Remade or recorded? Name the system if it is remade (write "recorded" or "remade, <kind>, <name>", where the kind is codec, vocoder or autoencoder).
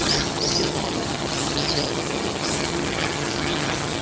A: remade, vocoder, HiFi-GAN